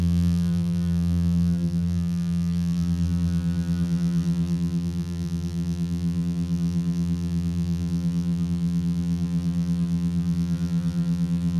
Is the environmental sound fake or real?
fake